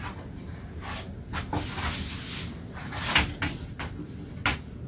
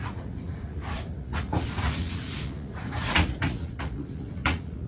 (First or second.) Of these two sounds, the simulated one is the second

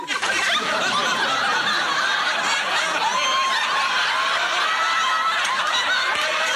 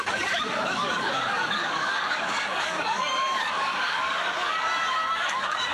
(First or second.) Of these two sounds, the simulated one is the second